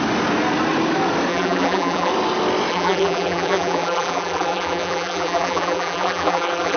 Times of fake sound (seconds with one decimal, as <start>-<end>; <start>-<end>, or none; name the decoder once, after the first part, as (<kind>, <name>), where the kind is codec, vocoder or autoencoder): 1.3-2.1 (vocoder, BigVGAN v2); 2.7-6.8